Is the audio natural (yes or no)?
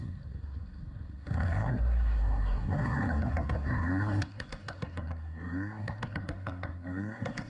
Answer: no